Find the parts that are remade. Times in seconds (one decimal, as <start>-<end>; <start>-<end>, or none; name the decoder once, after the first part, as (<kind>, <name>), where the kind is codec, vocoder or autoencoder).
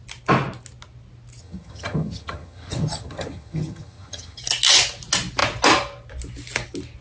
1.4-4.4 (vocoder, HiFi-GAN)